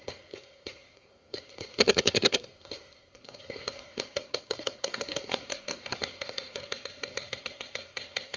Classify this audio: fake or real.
fake